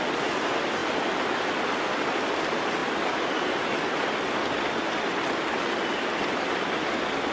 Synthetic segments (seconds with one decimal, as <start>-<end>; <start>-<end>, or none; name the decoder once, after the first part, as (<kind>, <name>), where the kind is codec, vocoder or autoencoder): 2.8-7.3 (vocoder, BigVGAN v2)